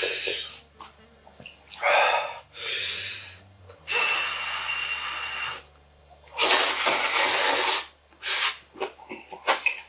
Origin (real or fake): real